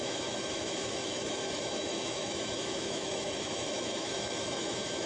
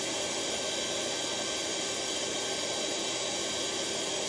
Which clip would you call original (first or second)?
second